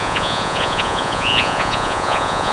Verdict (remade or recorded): remade